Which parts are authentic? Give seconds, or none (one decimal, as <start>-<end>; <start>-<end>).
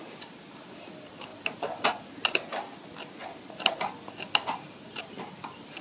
0.0-5.8